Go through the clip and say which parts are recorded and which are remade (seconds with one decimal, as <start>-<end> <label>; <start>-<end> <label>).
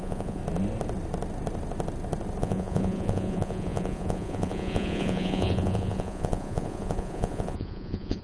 0.0-0.4 remade; 0.4-2.4 recorded; 2.4-8.2 remade